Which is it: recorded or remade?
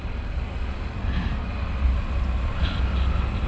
recorded